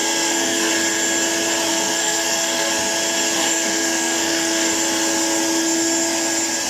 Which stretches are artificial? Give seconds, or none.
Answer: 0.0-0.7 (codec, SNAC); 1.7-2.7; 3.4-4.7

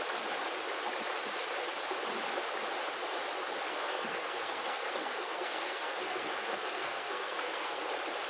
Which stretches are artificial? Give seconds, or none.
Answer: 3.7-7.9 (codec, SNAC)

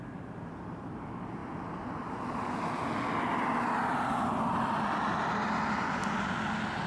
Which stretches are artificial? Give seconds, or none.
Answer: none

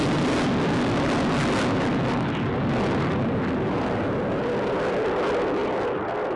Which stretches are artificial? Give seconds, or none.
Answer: none